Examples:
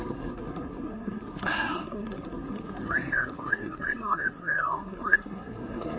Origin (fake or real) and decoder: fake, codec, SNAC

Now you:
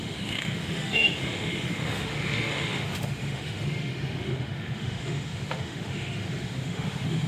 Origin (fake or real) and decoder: fake, autoencoder, DAC-VAE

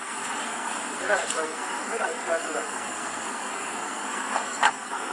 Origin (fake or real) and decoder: fake, codec, SNAC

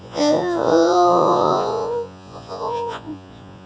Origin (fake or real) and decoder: fake, vocoder, Vocos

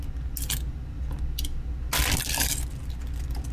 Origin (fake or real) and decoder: real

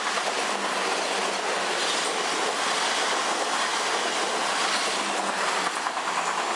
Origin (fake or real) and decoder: real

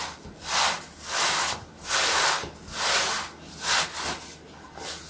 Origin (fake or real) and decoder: real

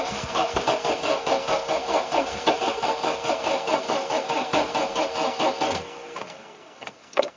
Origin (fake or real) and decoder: fake, codec, SNAC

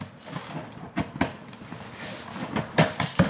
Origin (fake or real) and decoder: real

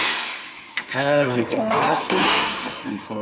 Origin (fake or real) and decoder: fake, codec, SNAC